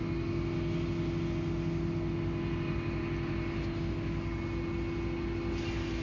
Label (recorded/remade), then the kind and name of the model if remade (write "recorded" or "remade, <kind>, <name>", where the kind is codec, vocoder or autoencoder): recorded